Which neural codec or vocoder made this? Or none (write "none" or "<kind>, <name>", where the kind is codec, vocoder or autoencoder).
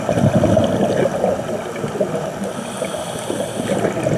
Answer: none